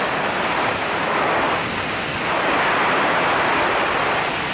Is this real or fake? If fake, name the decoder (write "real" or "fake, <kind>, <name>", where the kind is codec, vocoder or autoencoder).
real